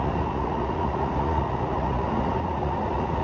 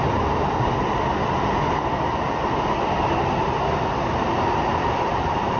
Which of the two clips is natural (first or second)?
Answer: second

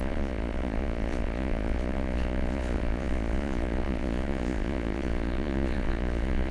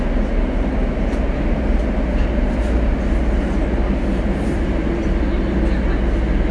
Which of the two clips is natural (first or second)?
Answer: second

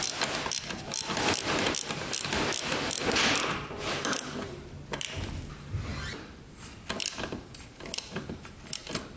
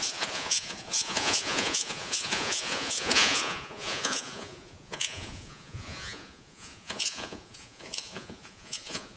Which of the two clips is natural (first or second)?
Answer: first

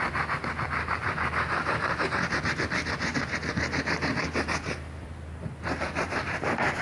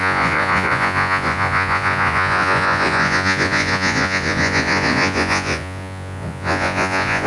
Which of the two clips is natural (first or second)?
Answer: first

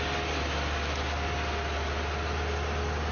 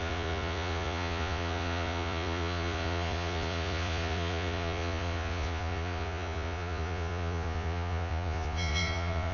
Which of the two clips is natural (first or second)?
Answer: first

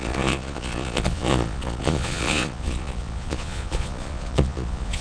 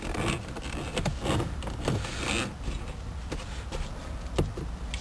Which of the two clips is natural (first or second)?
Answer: second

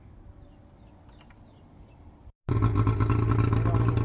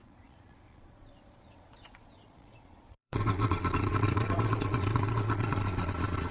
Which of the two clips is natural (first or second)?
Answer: first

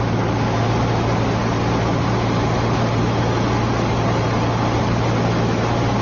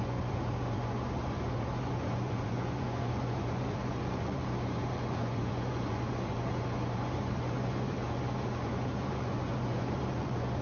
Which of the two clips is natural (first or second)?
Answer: first